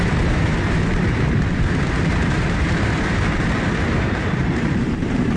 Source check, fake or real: fake